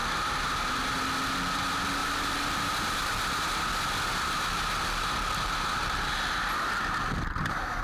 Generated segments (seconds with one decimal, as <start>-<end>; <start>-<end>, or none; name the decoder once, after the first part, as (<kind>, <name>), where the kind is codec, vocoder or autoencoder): 2.0-2.7 (vocoder, BigVGAN v2)